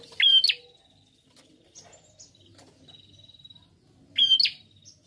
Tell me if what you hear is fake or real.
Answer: real